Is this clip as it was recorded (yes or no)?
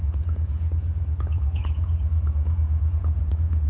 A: no